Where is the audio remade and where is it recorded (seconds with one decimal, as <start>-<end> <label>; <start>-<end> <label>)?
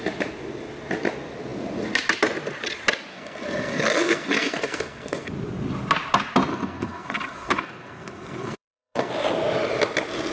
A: 0.0-3.1 recorded; 3.1-5.3 remade; 5.3-6.5 recorded; 6.5-9.1 remade; 9.1-10.3 recorded